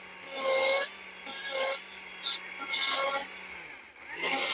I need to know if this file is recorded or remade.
recorded